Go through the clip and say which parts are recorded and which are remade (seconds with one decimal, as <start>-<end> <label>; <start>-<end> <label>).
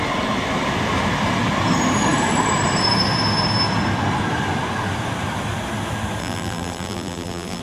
0.0-6.2 recorded; 6.2-7.6 remade